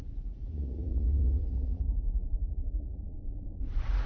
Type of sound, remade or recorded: remade